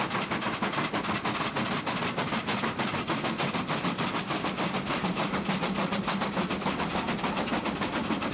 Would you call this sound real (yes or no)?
yes